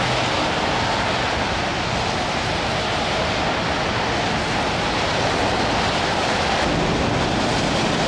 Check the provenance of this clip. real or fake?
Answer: real